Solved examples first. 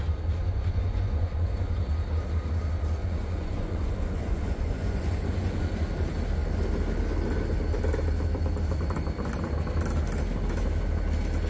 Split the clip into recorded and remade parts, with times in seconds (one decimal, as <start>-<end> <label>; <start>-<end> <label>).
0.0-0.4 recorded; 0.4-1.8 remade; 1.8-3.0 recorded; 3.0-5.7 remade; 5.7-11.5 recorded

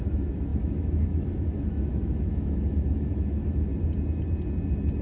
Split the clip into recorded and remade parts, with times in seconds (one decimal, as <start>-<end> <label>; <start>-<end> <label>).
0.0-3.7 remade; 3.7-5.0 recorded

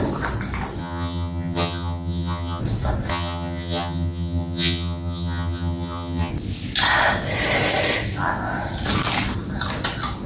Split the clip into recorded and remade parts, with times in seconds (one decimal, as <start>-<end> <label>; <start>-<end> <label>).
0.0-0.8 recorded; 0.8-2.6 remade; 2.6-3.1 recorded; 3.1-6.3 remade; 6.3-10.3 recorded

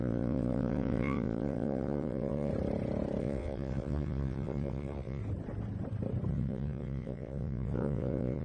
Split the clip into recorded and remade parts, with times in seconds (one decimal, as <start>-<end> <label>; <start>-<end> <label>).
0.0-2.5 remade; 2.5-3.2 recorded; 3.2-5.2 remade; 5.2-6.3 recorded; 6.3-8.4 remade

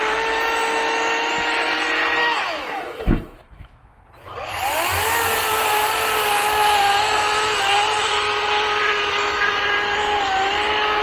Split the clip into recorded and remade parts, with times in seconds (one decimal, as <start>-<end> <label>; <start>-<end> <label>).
0.0-2.2 recorded; 2.2-4.0 remade; 4.0-11.0 recorded